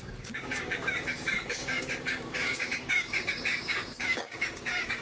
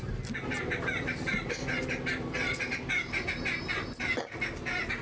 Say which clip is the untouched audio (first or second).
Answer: second